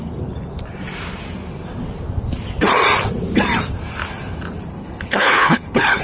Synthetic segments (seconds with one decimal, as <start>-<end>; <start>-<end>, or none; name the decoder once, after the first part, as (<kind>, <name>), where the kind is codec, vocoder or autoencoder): 4.7-6.0 (codec, HILCodec)